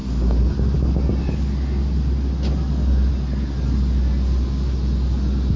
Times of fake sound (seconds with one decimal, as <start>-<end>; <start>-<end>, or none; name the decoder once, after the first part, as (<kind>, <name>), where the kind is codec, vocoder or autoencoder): none